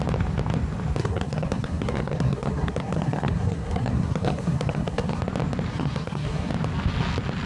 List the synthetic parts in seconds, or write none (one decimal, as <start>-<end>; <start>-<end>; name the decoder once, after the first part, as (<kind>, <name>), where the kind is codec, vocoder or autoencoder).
1.0-5.2 (codec, SNAC); 5.7-6.5